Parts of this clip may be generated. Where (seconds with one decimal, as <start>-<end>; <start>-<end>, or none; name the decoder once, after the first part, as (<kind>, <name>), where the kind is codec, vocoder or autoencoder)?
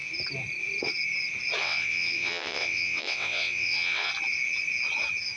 1.6-4.1 (vocoder, WaveNeXt)